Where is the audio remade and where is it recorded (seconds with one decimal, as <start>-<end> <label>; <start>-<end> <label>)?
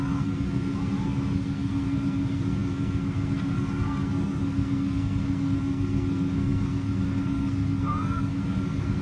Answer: 0.0-9.0 remade